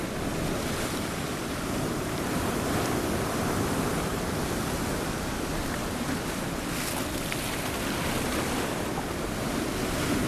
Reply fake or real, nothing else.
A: real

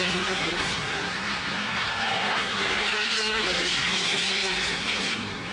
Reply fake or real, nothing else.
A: fake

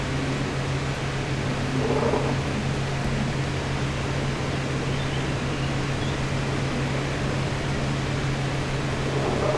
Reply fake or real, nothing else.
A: real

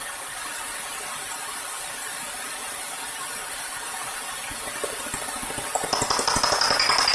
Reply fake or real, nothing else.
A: real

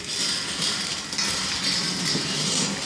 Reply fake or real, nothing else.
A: real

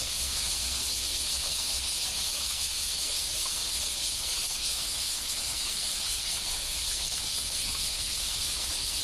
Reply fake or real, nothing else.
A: fake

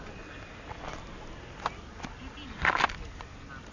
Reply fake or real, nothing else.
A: real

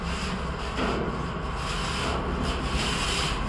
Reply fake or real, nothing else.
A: real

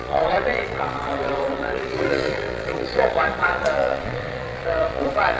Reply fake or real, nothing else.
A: fake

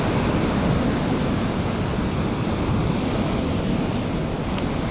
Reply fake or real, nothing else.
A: real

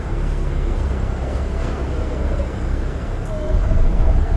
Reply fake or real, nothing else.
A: fake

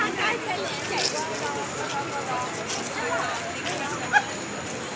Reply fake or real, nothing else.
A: real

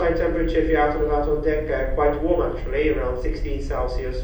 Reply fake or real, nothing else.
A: real